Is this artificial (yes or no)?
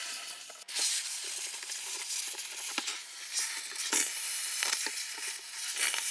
no